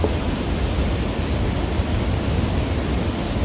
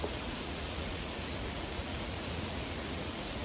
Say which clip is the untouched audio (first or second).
first